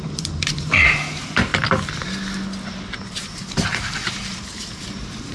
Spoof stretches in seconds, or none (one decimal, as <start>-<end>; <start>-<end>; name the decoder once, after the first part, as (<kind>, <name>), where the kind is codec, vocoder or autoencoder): 0.0-1.5 (vocoder, BigVGAN v2); 2.8-5.3